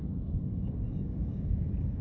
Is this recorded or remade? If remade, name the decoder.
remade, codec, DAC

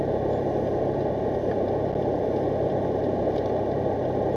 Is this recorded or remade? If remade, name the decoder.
recorded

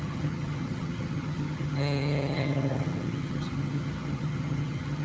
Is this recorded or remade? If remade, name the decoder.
remade, vocoder, HiFi-GAN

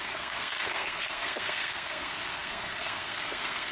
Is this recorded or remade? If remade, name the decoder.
remade, codec, SNAC